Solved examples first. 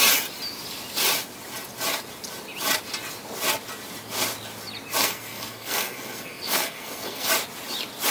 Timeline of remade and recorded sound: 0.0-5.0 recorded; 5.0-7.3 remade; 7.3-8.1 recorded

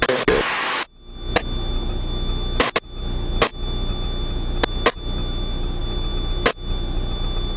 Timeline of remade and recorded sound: 0.0-7.6 recorded

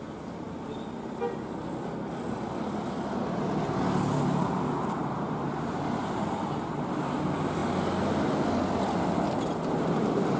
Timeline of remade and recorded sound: 0.0-10.4 recorded

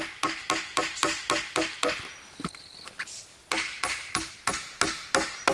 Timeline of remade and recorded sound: 0.0-5.5 recorded

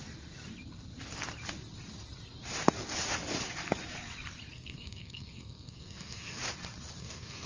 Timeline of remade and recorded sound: 0.0-4.5 recorded; 4.5-6.4 remade; 6.4-7.0 recorded; 7.0-7.5 remade

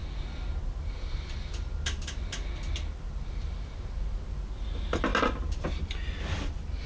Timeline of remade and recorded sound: 0.0-6.9 recorded

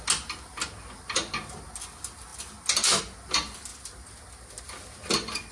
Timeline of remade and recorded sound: 0.0-5.5 recorded

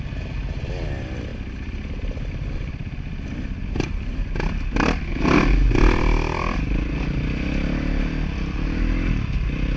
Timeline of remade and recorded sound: 0.0-9.8 recorded